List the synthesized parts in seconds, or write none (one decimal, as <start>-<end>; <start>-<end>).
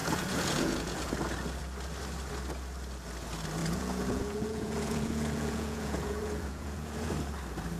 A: 0.0-1.1; 3.6-7.1